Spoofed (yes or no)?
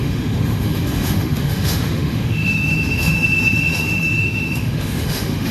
yes